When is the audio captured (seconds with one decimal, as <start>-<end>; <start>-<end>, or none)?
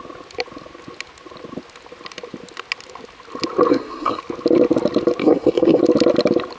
0.0-3.7; 4.2-5.2; 5.8-6.6